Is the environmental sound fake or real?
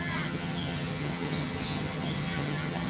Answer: fake